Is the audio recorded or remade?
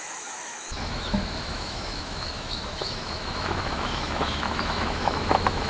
remade